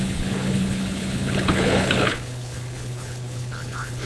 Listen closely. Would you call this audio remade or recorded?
remade